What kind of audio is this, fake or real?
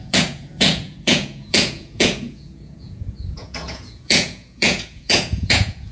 fake